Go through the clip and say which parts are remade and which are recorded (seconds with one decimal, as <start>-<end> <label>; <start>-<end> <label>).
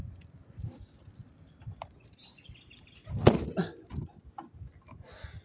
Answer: 0.0-5.4 recorded